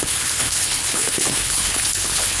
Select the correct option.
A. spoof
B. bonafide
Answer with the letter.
A